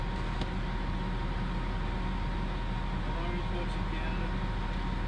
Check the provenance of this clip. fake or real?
real